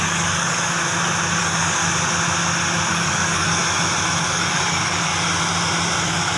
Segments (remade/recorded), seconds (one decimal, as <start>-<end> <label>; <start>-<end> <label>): 0.0-0.8 remade; 0.8-1.4 recorded; 1.4-1.8 remade; 1.8-2.9 recorded; 2.9-3.6 remade; 3.6-4.2 recorded; 4.2-5.1 remade; 5.1-6.0 recorded; 6.0-6.4 remade